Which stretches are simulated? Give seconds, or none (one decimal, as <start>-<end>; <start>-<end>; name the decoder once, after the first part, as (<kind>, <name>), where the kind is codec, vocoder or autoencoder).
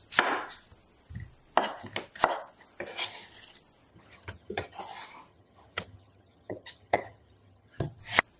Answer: 3.9-4.8 (vocoder, HiFi-GAN); 5.3-8.0